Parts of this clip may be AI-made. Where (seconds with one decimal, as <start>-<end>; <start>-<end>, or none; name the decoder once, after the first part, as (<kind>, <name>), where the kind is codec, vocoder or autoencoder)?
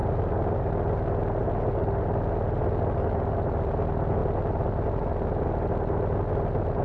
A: none